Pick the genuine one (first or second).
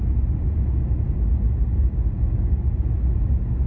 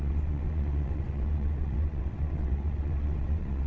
first